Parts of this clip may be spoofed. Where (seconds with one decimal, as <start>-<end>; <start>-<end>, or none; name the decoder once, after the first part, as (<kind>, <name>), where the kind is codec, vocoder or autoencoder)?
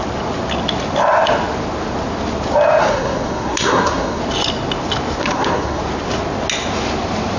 2.8-4.2 (codec, SNAC); 5.2-5.8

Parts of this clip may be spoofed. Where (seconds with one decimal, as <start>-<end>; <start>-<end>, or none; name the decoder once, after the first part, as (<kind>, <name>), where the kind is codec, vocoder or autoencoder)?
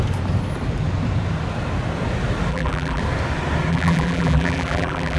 2.5-3.0 (vocoder, BigVGAN v2); 3.7-5.2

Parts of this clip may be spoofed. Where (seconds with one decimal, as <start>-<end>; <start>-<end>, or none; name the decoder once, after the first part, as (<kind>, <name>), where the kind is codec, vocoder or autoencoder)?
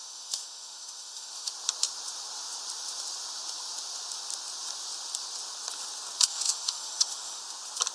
0.0-1.5 (autoencoder, DAC-VAE); 6.3-7.4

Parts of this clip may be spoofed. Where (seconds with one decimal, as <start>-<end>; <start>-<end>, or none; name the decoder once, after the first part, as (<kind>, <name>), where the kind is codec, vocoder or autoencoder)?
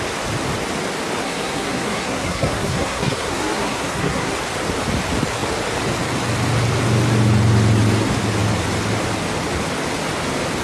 1.2-4.3 (codec, SNAC)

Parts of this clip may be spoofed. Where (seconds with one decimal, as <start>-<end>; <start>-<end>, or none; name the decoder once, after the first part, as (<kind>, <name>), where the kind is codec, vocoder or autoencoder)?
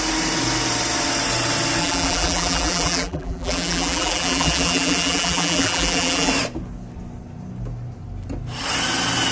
1.8-6.3 (vocoder, BigVGAN v2)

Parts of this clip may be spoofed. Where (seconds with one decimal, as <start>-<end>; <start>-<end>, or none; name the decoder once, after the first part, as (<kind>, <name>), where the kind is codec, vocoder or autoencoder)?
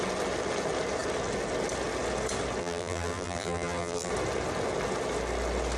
2.6-4.1 (vocoder, BigVGAN v2)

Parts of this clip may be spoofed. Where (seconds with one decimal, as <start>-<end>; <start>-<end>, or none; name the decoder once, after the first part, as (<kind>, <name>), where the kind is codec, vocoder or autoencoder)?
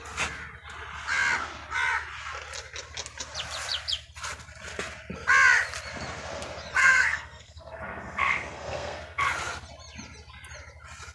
6.8-9.2 (codec, SNAC)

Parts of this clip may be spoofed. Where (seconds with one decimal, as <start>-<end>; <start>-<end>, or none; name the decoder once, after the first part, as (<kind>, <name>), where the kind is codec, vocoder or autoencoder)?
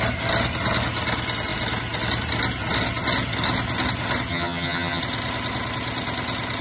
4.3-5.0 (vocoder, HiFi-GAN)